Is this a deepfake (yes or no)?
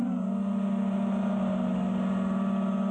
no